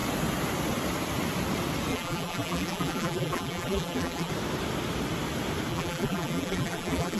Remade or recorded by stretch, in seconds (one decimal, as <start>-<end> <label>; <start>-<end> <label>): 0.0-1.9 recorded; 1.9-4.3 remade; 4.3-5.7 recorded; 5.7-7.2 remade